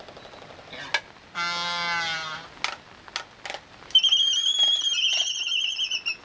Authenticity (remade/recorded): recorded